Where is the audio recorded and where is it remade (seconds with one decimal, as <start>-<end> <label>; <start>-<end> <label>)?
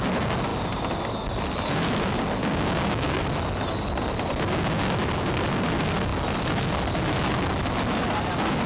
0.0-2.4 recorded; 2.4-3.2 remade; 3.2-8.7 recorded